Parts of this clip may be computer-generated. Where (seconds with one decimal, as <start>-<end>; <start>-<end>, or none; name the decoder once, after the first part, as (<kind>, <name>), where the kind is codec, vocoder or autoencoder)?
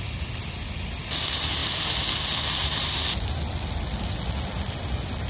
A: none